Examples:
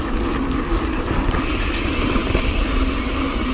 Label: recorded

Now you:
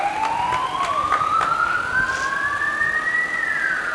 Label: recorded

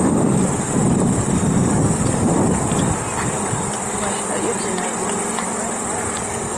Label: recorded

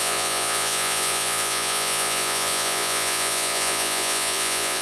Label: remade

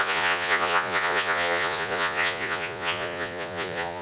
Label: remade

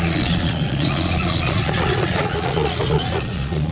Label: remade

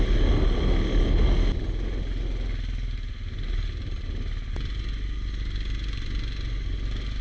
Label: recorded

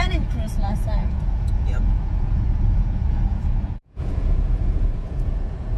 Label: remade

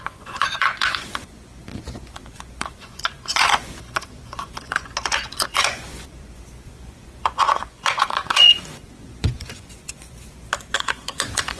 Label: remade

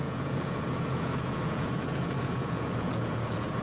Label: remade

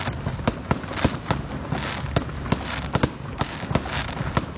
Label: recorded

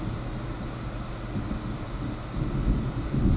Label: recorded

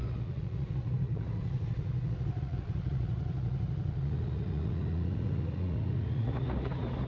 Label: remade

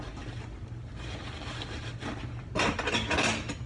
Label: recorded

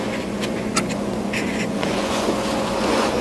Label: remade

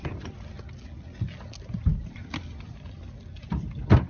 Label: recorded